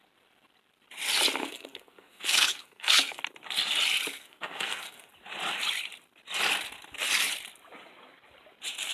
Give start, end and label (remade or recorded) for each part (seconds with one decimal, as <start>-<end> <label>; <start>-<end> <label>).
0.0-1.4 recorded; 1.4-3.2 remade; 3.2-4.1 recorded; 4.1-5.1 remade; 5.1-8.9 recorded

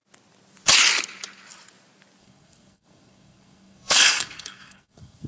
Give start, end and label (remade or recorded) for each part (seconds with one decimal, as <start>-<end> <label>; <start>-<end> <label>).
0.0-2.2 recorded; 2.2-5.3 remade

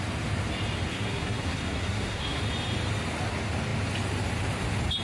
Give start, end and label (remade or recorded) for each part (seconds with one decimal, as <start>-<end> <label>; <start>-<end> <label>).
0.0-0.9 recorded; 0.9-2.4 remade; 2.4-5.0 recorded

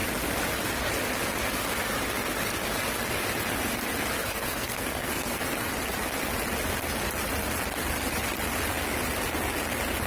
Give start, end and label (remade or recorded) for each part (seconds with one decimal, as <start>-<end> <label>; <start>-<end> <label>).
0.0-4.2 recorded; 4.2-5.4 remade; 5.4-10.1 recorded

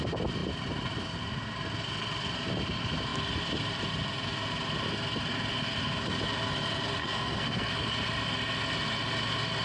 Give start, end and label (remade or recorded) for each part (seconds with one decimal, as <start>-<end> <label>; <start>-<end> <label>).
0.0-7.0 recorded; 7.0-7.7 remade; 7.7-9.6 recorded

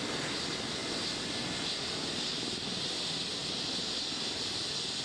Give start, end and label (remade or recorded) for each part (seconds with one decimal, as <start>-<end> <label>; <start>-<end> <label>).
0.0-5.0 recorded

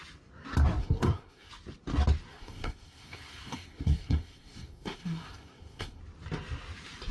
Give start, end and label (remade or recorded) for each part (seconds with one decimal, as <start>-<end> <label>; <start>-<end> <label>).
0.0-0.8 recorded; 0.8-1.5 remade; 1.5-2.3 recorded; 2.3-6.0 remade; 6.0-7.1 recorded